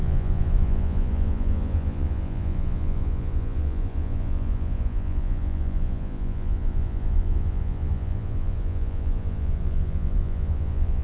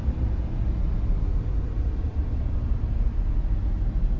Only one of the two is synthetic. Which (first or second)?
first